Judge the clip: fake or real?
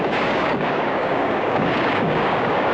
fake